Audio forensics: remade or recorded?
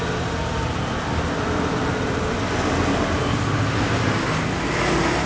recorded